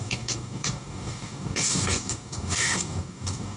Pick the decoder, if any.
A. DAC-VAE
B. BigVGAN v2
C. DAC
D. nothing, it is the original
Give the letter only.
C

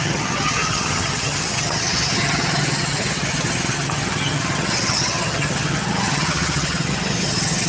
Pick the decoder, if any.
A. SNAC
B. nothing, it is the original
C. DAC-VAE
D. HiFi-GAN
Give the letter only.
D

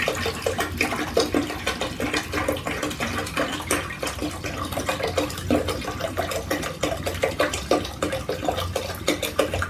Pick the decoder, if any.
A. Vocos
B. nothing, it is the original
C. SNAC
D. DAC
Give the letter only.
B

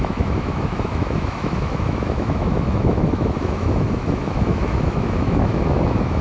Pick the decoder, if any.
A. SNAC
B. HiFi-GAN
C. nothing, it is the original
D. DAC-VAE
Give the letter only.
D